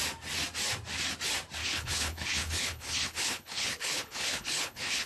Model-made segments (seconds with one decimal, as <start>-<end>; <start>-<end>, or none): 1.6-5.1